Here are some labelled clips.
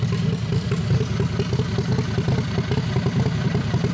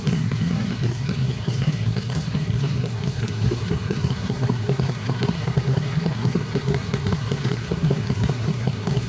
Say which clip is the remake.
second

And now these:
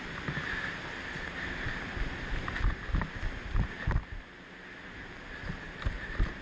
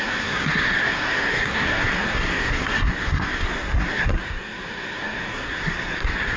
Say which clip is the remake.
second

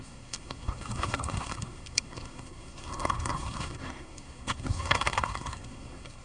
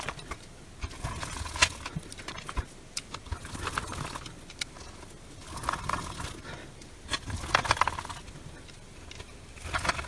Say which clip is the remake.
first